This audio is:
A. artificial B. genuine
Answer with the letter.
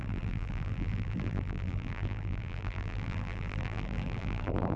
A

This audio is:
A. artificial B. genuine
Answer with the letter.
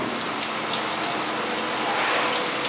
B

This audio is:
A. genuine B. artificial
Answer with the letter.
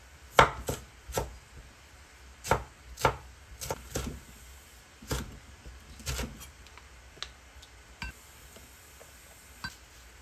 A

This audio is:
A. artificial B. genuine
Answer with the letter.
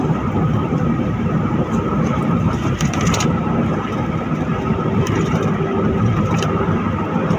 A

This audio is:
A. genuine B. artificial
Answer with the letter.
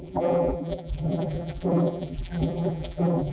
B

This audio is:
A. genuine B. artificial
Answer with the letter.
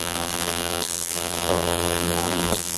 B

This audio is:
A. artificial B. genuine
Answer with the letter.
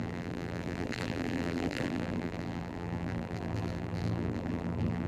A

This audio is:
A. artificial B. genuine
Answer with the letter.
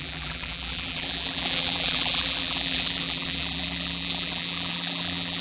A